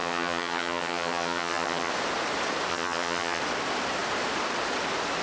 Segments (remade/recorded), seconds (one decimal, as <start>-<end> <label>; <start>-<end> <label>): 0.0-1.9 remade; 1.9-2.7 recorded; 2.7-3.4 remade; 3.4-5.2 recorded